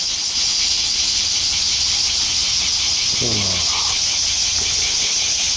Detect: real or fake real